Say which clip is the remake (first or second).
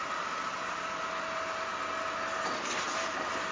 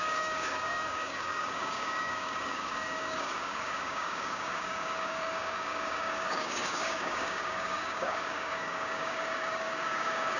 second